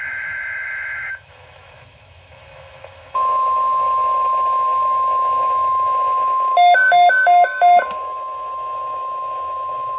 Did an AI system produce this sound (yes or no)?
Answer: yes